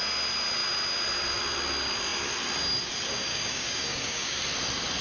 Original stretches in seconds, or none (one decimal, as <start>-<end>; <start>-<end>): 0.0-3.3; 4.4-5.0